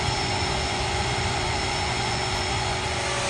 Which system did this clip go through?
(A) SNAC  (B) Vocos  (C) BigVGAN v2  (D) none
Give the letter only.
B